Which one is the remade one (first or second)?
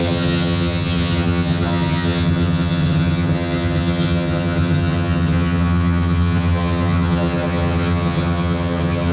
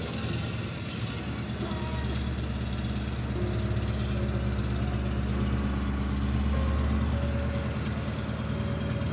first